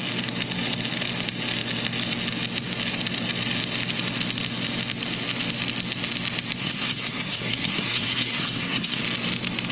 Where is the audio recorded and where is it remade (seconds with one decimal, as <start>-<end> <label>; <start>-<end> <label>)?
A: 0.0-6.6 recorded; 6.6-9.0 remade; 9.0-9.7 recorded